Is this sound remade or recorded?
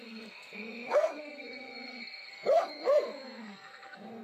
remade